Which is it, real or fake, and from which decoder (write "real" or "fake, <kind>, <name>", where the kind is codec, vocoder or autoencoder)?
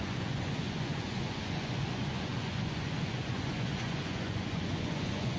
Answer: fake, vocoder, Vocos